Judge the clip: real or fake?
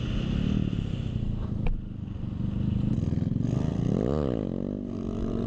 real